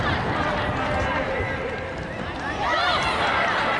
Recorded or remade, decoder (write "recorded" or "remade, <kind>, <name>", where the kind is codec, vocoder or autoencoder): remade, vocoder, BigVGAN v2